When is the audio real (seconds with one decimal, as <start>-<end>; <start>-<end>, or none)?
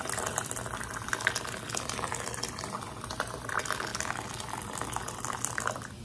none